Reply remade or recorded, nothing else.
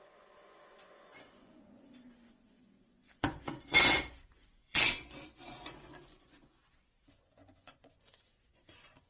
remade